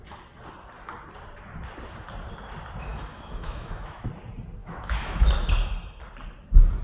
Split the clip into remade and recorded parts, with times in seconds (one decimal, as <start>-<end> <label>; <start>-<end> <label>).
0.0-2.9 recorded; 2.9-4.1 remade; 4.1-4.6 recorded; 4.6-5.3 remade; 5.3-6.8 recorded